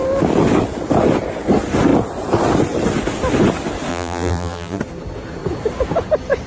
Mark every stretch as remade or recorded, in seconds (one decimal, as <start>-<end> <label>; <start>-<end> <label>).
0.0-3.9 recorded; 3.9-4.8 remade; 4.8-6.5 recorded

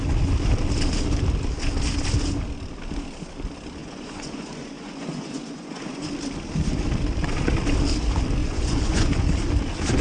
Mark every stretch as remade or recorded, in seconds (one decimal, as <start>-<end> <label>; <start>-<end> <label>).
0.0-3.8 recorded; 3.8-6.1 remade; 6.1-8.4 recorded; 8.4-9.1 remade; 9.1-10.0 recorded